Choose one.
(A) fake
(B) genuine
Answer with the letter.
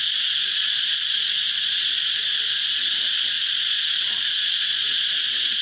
A